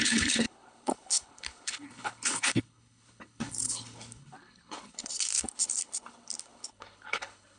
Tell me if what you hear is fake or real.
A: fake